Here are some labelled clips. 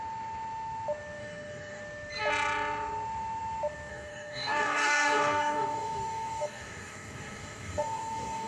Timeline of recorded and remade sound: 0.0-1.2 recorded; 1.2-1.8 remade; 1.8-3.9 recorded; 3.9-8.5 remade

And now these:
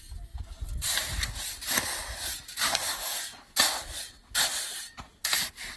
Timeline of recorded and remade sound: 0.0-2.5 recorded; 2.5-3.2 remade; 3.2-5.8 recorded

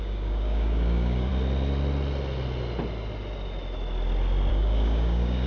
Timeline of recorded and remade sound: 0.0-1.3 remade; 1.3-4.5 recorded; 4.5-5.5 remade

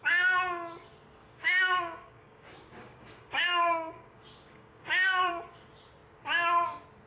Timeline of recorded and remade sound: 0.0-1.2 recorded; 1.2-5.3 remade; 5.3-7.1 recorded

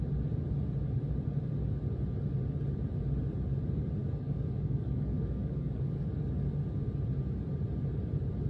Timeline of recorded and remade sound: 0.0-4.0 recorded; 4.0-6.1 remade; 6.1-8.5 recorded

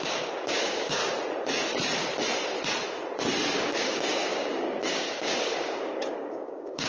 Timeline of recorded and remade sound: 0.0-1.0 remade; 1.0-3.6 recorded; 3.6-6.9 remade